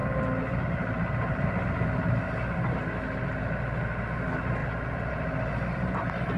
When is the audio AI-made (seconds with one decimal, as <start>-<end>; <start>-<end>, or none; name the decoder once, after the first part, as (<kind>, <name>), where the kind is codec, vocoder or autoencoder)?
none